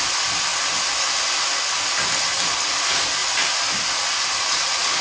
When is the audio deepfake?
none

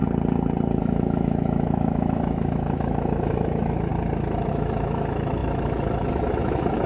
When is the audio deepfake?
0.8-3.9 (autoencoder, DAC-VAE); 4.5-6.9

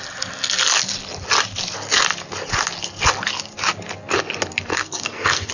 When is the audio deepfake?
4.7-5.5 (codec, SNAC)

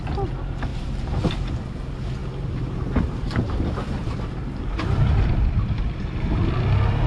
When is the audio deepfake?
0.7-1.3 (vocoder, BigVGAN v2); 2.2-6.5

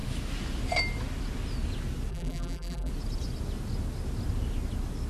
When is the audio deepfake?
2.1-2.9 (vocoder, BigVGAN v2)

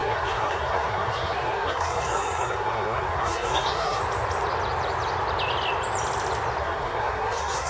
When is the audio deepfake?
0.0-4.0 (codec, SNAC); 6.6-7.7